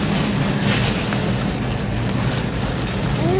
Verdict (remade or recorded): recorded